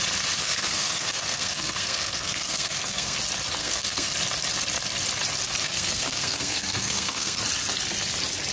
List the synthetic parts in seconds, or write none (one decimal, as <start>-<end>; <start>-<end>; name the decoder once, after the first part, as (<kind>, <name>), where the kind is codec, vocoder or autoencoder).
0.4-3.2 (codec, SNAC); 3.6-4.1; 5.6-7.4